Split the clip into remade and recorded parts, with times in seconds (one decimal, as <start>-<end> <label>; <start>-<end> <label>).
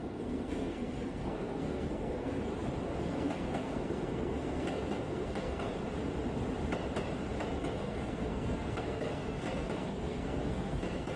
0.0-2.5 remade; 2.5-3.0 recorded; 3.0-5.7 remade; 5.7-7.4 recorded; 7.4-11.2 remade